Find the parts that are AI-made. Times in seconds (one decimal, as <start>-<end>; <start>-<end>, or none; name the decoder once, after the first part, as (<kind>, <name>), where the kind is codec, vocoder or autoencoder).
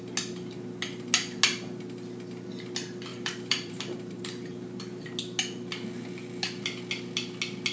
3.1-4.2 (vocoder, BigVGAN v2)